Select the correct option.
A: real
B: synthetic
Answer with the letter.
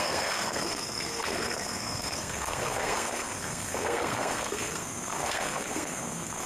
B